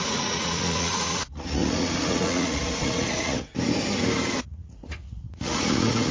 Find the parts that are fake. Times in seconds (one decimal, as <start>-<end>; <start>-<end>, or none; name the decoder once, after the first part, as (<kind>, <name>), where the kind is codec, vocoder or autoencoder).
0.0-3.5 (vocoder, Vocos); 4.4-6.1

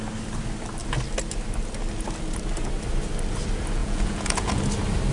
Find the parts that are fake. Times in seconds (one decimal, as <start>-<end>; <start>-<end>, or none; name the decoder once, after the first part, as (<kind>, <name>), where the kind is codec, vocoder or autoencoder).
3.8-4.6 (vocoder, Vocos)

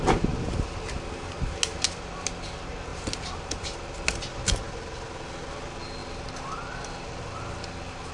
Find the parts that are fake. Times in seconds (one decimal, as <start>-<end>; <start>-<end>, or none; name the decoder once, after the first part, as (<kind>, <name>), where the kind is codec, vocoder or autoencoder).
none

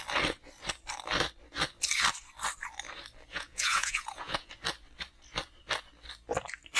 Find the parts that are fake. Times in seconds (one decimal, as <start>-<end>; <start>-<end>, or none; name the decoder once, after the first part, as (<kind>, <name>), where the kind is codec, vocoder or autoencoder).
3.3-4.5 (vocoder, Vocos)

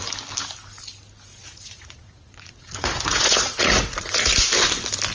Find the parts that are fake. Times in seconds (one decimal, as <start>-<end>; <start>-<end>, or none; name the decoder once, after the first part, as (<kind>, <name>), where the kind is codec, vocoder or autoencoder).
1.3-4.4 (vocoder, Vocos)